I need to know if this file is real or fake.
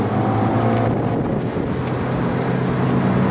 real